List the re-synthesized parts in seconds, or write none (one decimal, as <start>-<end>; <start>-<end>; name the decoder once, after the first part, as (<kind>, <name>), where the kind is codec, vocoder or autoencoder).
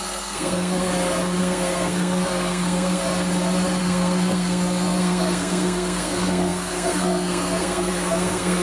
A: 0.0-0.9 (codec, SNAC); 1.4-3.0; 3.8-8.6